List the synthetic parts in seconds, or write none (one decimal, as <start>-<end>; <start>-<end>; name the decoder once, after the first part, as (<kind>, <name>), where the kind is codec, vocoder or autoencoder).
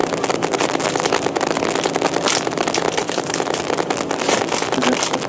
3.0-3.6 (vocoder, BigVGAN v2)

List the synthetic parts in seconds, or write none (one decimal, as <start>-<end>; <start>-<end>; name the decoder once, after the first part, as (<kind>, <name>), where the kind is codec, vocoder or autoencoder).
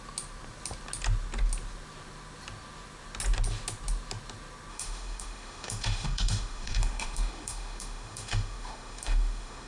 4.7-9.7 (autoencoder, DAC-VAE)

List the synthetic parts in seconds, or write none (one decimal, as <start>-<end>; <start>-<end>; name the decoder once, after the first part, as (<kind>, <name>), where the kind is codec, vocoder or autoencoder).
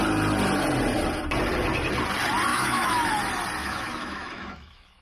2.5-3.1 (autoencoder, DAC-VAE); 3.6-5.0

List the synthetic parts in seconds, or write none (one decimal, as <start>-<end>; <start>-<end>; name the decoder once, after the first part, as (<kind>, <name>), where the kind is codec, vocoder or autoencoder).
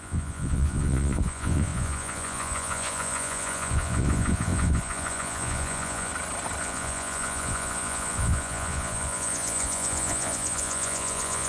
0.0-6.1 (vocoder, Vocos); 6.6-11.5